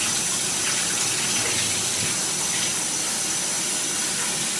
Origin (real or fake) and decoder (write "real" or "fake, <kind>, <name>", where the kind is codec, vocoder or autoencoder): real